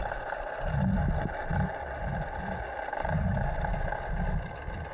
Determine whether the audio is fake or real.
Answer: real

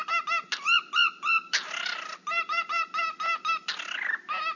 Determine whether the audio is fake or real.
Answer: real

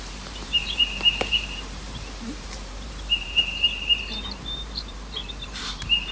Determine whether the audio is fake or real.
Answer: fake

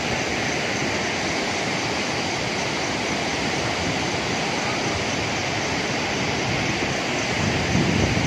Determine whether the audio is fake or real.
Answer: real